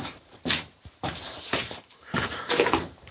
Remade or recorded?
remade